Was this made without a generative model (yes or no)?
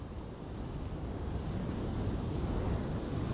yes